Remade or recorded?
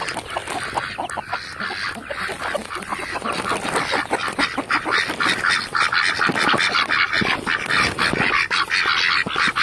recorded